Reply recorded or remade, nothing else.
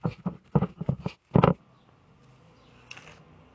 recorded